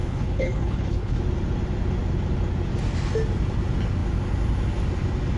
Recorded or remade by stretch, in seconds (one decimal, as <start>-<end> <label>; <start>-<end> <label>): 0.0-1.2 remade; 1.2-5.4 recorded